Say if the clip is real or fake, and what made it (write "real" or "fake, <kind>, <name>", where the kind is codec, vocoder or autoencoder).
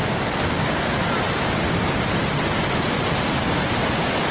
real